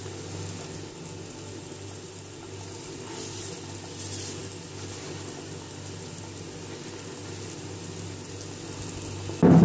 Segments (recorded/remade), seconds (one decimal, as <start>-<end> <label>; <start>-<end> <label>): 0.0-9.6 recorded